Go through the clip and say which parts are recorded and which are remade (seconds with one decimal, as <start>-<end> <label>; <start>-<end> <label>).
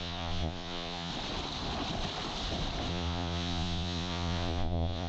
0.0-1.1 remade; 1.1-2.9 recorded; 2.9-5.1 remade